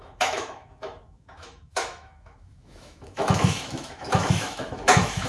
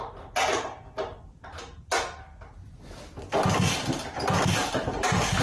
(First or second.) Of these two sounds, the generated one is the first